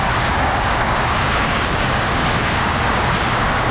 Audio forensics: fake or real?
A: fake